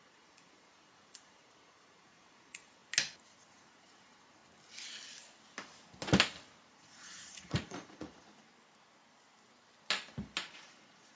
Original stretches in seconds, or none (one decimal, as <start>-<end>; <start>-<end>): 2.8-3.5; 4.4-6.7; 8.5-10.4